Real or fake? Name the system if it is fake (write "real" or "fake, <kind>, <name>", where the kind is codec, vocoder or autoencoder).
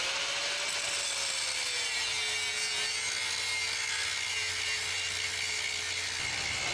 real